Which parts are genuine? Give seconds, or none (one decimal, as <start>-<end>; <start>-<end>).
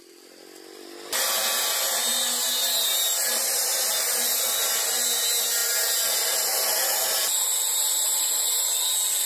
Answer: 0.0-5.6; 8.2-9.3